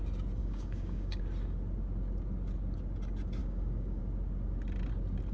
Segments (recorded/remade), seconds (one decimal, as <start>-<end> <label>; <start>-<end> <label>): 0.0-0.4 recorded; 0.4-1.2 remade; 1.2-3.4 recorded; 3.4-4.0 remade; 4.0-5.3 recorded

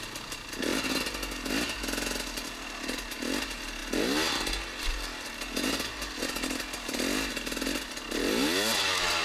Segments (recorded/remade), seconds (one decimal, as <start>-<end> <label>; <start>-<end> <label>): 0.0-9.2 recorded

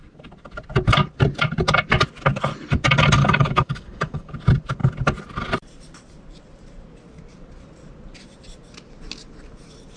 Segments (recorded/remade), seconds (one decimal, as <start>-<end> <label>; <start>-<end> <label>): 0.0-3.2 recorded; 3.2-4.3 remade; 4.3-10.0 recorded

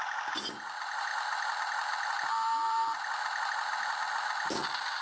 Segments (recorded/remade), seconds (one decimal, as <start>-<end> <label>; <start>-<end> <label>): 0.0-5.0 recorded

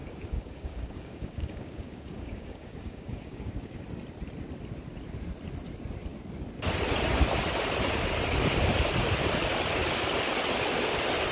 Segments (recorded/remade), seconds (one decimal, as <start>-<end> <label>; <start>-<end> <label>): 0.0-3.8 remade; 3.8-11.3 recorded

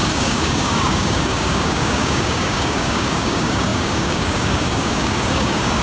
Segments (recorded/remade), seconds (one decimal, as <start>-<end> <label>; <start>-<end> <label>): 0.0-5.8 remade

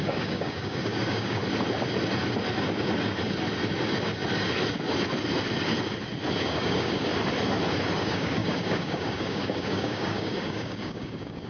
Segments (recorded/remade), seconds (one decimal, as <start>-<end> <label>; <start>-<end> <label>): 0.0-1.4 remade; 1.4-6.4 recorded; 6.4-7.1 remade; 7.1-8.0 recorded; 8.0-11.5 remade